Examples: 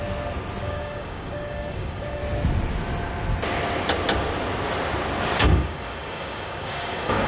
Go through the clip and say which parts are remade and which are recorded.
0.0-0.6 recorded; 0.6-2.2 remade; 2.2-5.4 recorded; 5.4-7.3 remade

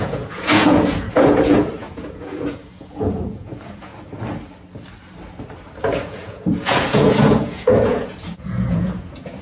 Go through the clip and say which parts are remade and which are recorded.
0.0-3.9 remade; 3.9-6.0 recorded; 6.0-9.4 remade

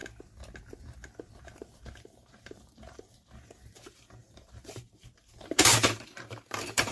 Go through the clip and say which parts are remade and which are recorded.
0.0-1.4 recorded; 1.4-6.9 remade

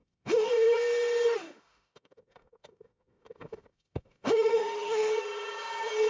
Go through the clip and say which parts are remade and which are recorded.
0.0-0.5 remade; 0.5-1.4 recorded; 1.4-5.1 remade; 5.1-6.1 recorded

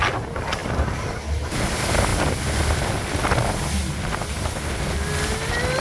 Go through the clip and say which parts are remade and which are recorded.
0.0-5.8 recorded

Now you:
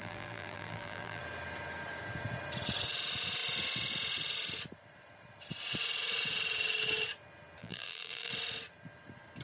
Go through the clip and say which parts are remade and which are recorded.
0.0-1.2 remade; 1.2-7.6 recorded; 7.6-8.3 remade; 8.3-9.4 recorded

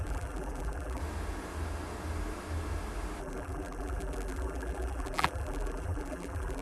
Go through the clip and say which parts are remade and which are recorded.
0.0-1.0 remade; 1.0-3.2 recorded; 3.2-6.6 remade

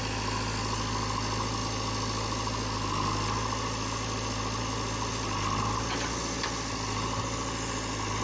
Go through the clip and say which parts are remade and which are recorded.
0.0-8.2 recorded